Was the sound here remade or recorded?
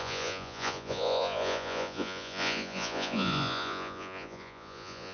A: remade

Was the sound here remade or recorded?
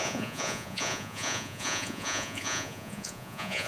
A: remade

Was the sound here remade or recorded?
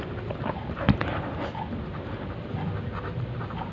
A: recorded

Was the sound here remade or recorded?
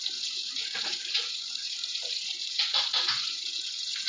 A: remade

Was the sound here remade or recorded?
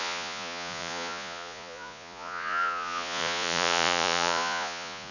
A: remade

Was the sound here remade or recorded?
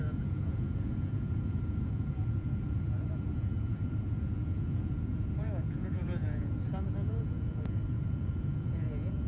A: remade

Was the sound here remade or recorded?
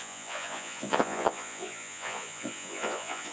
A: remade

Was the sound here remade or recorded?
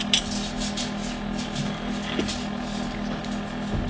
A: recorded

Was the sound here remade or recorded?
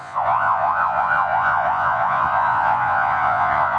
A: remade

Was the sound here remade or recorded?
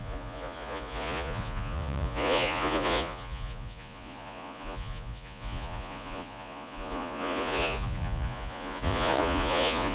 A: remade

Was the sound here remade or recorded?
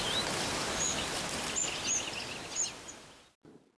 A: recorded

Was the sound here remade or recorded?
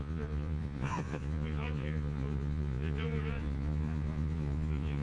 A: remade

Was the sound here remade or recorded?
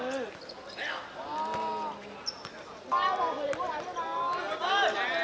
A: recorded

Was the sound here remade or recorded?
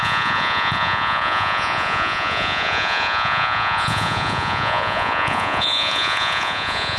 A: remade